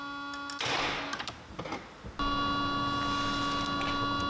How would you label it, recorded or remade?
recorded